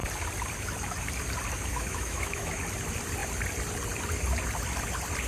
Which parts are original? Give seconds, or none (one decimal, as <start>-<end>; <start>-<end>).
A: 0.0-1.7; 2.6-5.3